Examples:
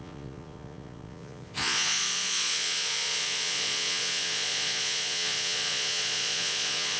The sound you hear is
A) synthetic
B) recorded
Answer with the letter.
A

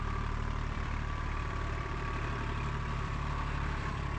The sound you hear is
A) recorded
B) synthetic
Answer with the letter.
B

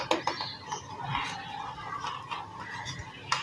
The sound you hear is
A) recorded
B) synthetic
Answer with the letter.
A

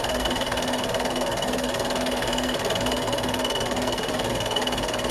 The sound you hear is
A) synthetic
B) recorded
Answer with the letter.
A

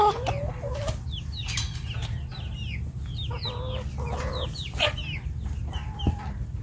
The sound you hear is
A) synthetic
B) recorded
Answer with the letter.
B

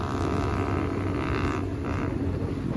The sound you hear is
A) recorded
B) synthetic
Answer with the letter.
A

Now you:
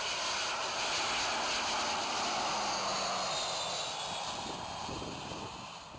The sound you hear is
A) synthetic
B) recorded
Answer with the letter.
B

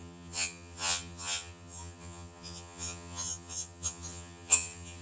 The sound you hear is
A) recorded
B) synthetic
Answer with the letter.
B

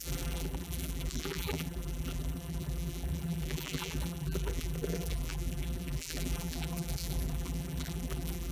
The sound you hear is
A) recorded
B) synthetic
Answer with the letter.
B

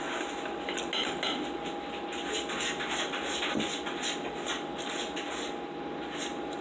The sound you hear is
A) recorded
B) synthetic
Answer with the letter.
A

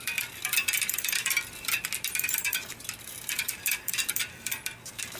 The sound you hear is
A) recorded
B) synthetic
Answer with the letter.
A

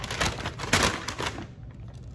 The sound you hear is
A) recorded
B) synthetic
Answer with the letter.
A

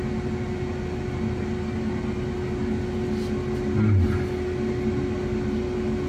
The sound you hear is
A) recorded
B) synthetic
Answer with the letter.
A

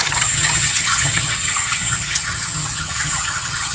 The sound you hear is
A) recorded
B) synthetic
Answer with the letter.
B